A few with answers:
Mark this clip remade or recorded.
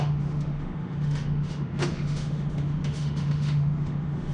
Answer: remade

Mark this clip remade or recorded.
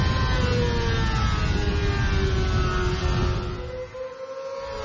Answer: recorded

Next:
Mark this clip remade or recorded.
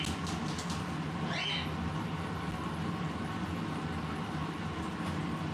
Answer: recorded